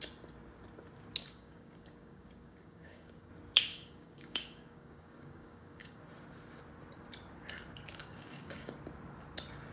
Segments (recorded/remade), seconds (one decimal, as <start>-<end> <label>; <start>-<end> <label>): 0.0-1.2 recorded; 1.2-3.3 remade; 3.3-3.7 recorded; 3.7-6.0 remade; 6.0-8.0 recorded; 8.0-8.7 remade; 8.7-9.7 recorded